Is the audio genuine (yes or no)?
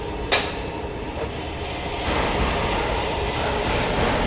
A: yes